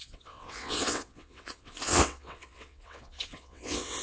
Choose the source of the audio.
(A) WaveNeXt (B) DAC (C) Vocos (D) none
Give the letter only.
A